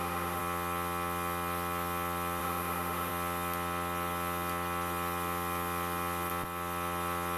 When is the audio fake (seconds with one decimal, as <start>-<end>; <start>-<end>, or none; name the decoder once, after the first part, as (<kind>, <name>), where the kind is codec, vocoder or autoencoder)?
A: 0.0-0.4 (autoencoder, DAC-VAE); 2.4-3.1